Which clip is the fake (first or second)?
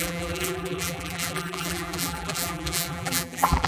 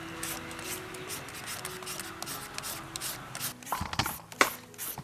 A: first